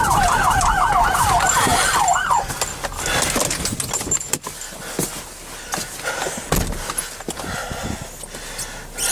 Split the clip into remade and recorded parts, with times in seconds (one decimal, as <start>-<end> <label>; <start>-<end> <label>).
0.0-9.1 recorded